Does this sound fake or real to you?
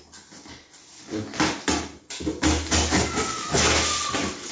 real